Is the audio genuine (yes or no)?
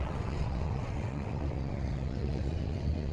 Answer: no